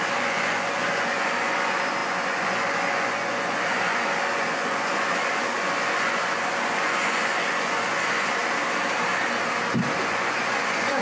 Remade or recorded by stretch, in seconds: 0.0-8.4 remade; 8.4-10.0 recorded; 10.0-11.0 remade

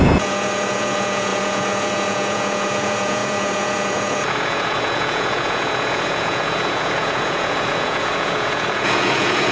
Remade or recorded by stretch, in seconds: 0.0-9.5 remade

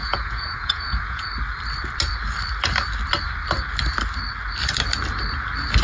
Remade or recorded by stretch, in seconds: 0.0-1.3 remade; 1.3-5.8 recorded

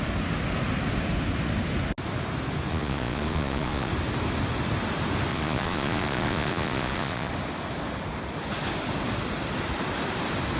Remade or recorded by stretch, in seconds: 0.0-2.7 recorded; 2.7-3.9 remade; 3.9-5.3 recorded; 5.3-7.3 remade; 7.3-10.6 recorded

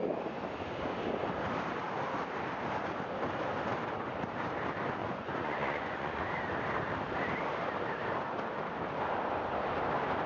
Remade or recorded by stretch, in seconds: 0.0-5.0 recorded; 5.0-6.2 remade; 6.2-10.3 recorded

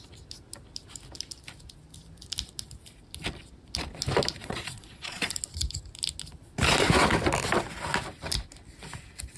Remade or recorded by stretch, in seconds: 0.0-4.4 recorded; 4.4-5.3 remade; 5.3-9.4 recorded